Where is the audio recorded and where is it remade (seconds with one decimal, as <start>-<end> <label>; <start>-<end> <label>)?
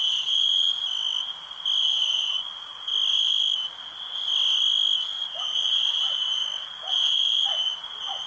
0.0-0.9 remade; 0.9-1.8 recorded; 1.8-2.9 remade; 2.9-5.2 recorded; 5.2-6.4 remade; 6.4-6.9 recorded; 6.9-8.3 remade